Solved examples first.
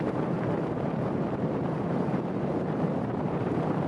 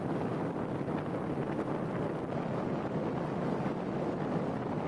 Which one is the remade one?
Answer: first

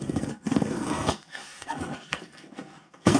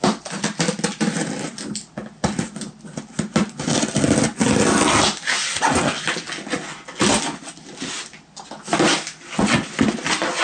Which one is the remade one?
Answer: first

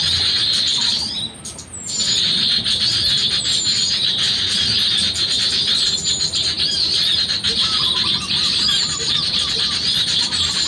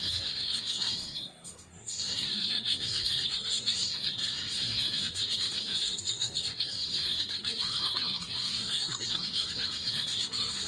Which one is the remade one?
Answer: second